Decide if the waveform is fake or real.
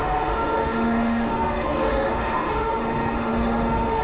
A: fake